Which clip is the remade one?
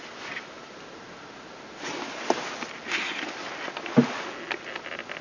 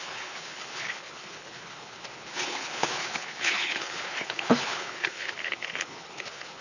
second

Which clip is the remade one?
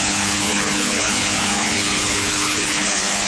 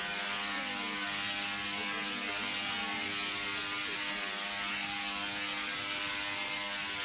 first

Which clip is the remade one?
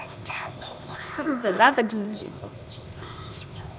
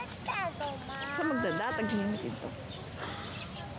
first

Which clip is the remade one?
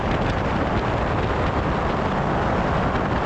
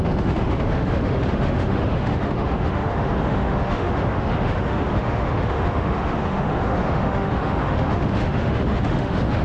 second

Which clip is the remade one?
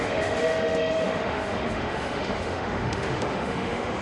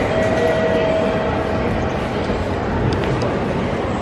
first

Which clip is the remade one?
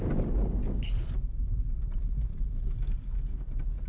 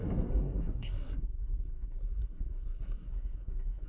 second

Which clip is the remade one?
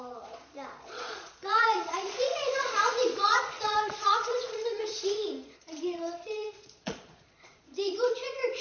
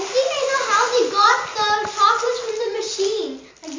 first